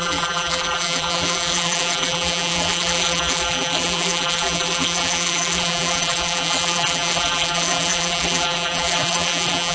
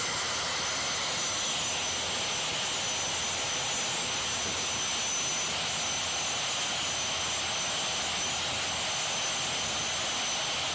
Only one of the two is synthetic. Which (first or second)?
first